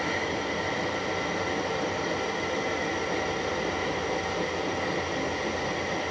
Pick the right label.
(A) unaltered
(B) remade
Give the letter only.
A